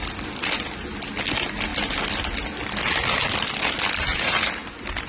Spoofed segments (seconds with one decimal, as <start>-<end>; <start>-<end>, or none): 4.1-5.1